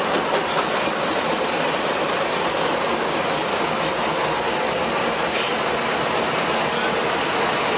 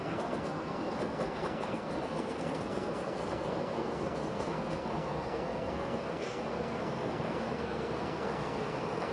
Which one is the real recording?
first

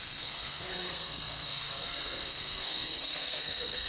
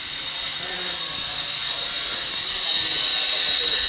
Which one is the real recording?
second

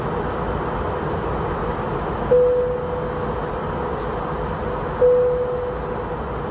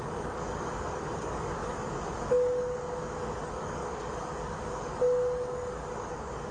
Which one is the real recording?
first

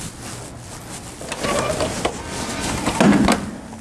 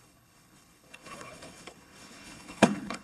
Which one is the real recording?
first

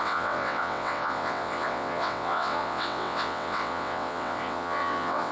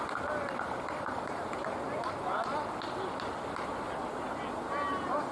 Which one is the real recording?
second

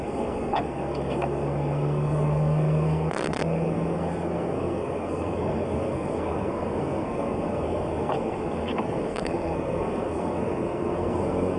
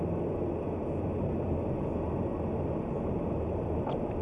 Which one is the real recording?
second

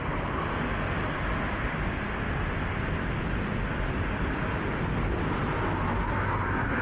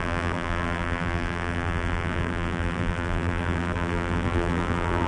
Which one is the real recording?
first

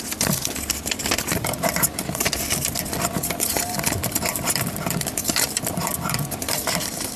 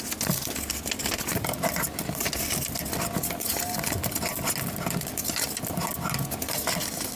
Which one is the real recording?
second